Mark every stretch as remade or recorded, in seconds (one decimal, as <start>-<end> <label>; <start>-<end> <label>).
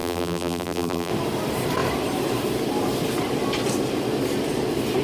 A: 0.0-1.1 remade; 1.1-5.0 recorded